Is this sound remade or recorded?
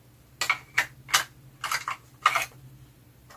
recorded